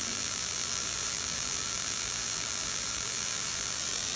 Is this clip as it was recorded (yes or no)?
no